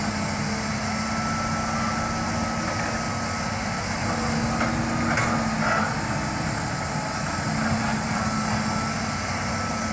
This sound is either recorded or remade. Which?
recorded